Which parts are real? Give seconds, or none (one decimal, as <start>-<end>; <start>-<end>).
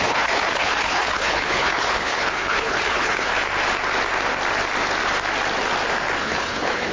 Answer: 3.3-6.2